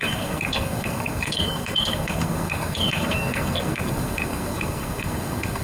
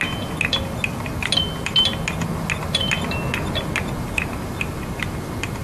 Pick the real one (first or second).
second